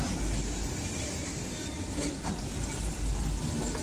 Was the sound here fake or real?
real